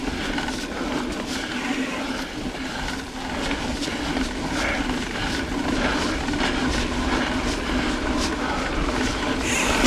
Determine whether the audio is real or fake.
real